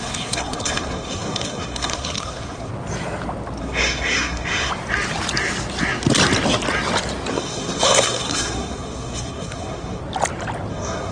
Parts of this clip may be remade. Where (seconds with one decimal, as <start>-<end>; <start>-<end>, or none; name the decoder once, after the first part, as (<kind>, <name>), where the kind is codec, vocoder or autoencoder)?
0.0-2.7 (codec, SNAC); 3.6-4.7; 7.3-10.0; 10.7-11.1